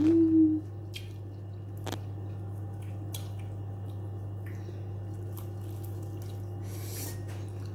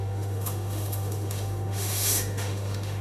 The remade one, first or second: second